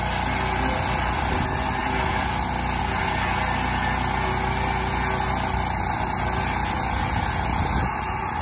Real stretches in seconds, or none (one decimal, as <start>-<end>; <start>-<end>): 0.0-8.4